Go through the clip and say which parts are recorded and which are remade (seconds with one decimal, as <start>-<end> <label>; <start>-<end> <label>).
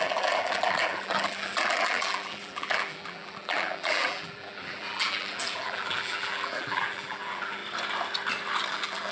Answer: 0.0-7.6 remade; 7.6-8.7 recorded; 8.7-9.1 remade